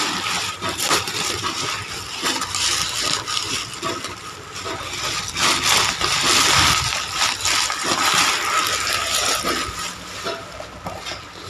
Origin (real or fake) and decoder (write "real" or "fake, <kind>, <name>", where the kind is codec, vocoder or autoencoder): fake, vocoder, BigVGAN v2